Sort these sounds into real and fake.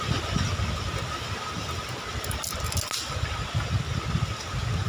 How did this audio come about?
real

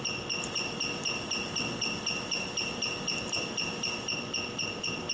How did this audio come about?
real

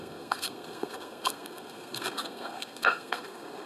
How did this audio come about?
fake